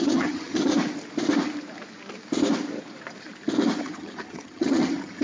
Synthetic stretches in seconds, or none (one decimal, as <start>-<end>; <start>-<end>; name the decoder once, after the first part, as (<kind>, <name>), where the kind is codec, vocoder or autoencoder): 0.0-0.7 (vocoder, HiFi-GAN); 3.8-5.2